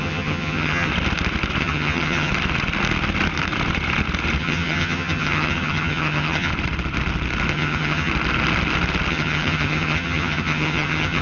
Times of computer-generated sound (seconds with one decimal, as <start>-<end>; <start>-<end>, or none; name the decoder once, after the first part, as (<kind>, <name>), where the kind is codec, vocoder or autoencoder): 0.0-0.9 (vocoder, HiFi-GAN); 1.6-2.3; 4.4-6.5; 7.5-8.1; 9.1-11.2